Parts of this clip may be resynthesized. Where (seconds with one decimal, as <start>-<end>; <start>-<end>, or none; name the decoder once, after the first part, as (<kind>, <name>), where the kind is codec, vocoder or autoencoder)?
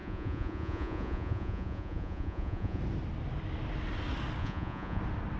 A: 0.0-2.8 (vocoder, Vocos); 4.4-5.0